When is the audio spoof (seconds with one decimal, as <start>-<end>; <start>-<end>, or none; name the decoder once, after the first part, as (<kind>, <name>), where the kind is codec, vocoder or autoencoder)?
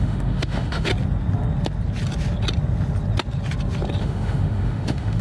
0.0-0.9 (autoencoder, DAC-VAE); 4.0-5.2